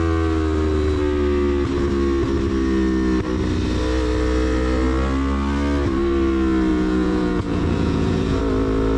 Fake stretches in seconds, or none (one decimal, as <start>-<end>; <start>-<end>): 6.7-8.4